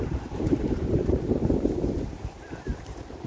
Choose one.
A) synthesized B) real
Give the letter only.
A